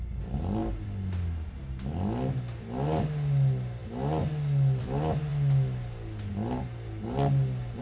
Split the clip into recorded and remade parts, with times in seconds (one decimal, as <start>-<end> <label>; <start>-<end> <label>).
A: 0.0-7.8 recorded